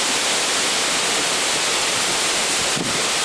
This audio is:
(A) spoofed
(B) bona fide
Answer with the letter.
B